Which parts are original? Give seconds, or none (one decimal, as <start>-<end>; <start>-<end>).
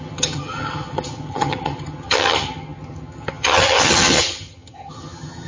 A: none